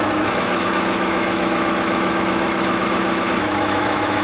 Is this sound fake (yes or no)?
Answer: yes